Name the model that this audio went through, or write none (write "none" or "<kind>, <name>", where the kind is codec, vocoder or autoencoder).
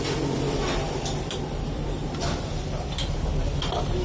none